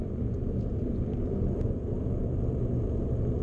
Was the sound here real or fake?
real